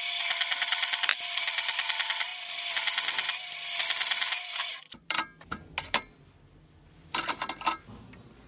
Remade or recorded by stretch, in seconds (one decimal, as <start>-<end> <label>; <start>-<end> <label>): 0.0-2.3 remade; 2.3-4.4 recorded; 4.4-5.3 remade; 5.3-6.9 recorded; 6.9-8.5 remade